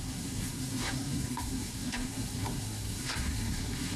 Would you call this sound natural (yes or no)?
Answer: no